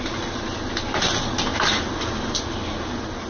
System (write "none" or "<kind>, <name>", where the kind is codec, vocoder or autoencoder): none